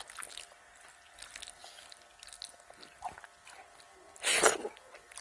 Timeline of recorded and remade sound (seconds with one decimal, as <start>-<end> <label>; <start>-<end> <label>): 0.0-5.2 recorded